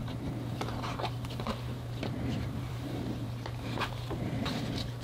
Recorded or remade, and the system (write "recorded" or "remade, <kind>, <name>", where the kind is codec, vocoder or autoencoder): remade, vocoder, BigVGAN v2